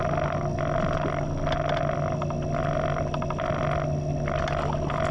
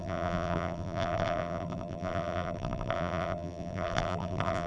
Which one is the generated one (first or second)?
second